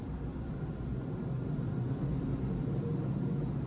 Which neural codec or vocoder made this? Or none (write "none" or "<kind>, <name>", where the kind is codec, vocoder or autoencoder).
none